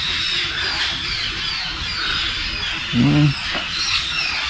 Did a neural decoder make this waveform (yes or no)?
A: no